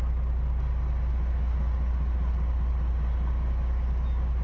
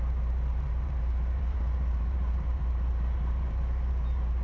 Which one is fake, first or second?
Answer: second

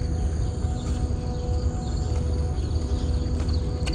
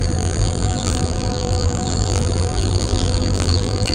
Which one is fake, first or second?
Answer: second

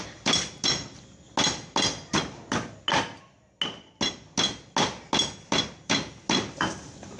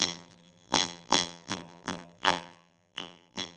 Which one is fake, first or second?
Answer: second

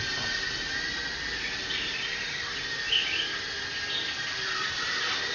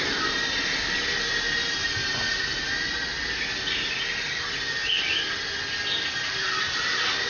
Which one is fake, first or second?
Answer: first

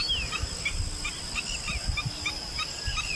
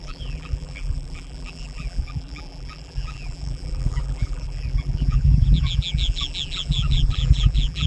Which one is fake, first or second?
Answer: second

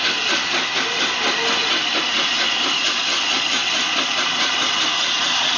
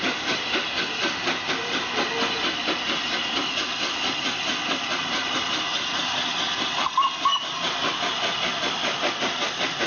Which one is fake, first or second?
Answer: first